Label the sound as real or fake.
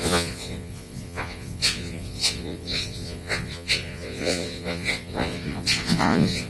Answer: fake